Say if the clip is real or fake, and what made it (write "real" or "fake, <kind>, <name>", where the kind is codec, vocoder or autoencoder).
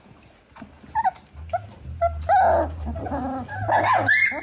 real